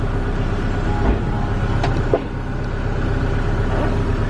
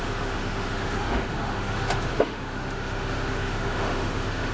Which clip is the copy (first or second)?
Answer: second